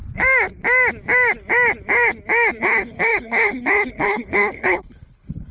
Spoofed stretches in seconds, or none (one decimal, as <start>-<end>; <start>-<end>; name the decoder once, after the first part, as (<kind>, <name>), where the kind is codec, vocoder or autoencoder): 2.6-5.5 (codec, HILCodec)